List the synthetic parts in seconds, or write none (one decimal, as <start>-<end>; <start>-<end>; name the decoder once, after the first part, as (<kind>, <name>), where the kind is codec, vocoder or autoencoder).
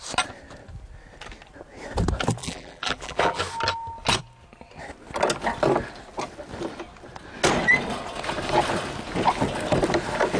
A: 2.4-3.4 (vocoder, BigVGAN v2)